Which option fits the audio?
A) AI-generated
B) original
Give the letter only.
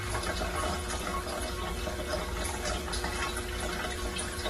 B